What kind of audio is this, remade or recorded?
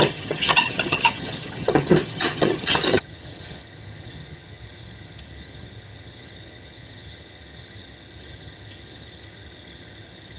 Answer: remade